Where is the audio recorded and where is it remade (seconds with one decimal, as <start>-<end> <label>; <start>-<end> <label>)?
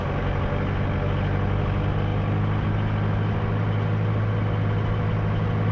0.0-5.7 recorded